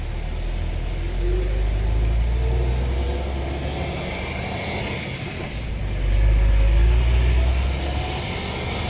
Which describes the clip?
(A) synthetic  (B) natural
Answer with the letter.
B